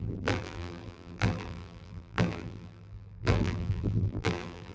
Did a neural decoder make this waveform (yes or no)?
yes